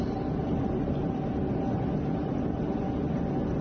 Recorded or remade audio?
recorded